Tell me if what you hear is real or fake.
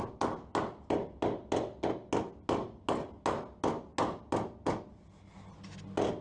real